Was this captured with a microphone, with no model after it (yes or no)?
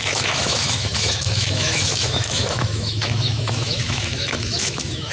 no